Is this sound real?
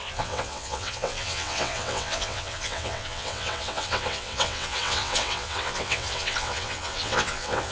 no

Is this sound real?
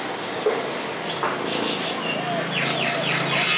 yes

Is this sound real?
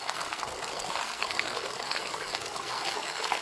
no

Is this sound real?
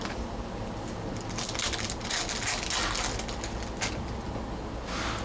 yes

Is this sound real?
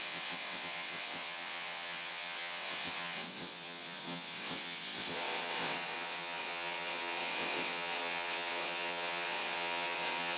no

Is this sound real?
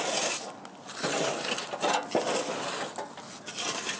yes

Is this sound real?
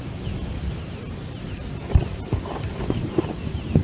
yes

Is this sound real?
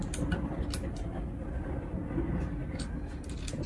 yes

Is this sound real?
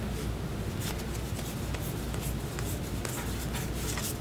yes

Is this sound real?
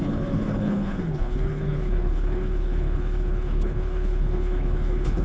no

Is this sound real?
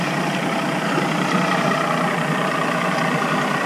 yes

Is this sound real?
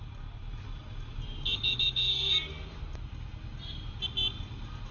yes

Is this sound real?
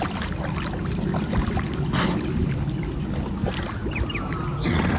yes